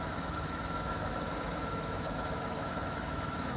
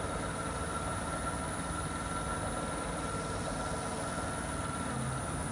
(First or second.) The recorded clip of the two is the second